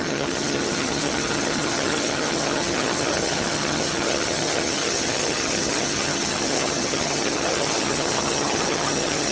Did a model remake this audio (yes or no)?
yes